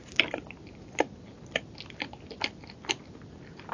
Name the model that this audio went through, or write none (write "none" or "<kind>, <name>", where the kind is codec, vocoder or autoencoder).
vocoder, BigVGAN v2